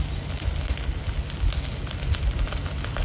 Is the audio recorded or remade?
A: recorded